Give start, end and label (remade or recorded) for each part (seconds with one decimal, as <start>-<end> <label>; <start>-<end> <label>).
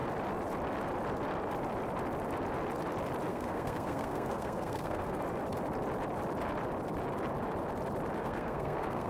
0.0-3.3 recorded; 3.3-5.2 remade; 5.2-8.2 recorded; 8.2-9.1 remade